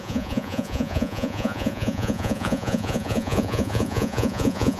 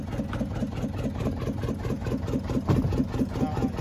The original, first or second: second